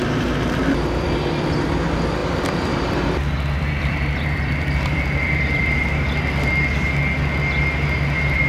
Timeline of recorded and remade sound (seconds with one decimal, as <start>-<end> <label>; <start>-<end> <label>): 0.0-2.2 recorded; 2.2-5.6 remade; 5.6-8.5 recorded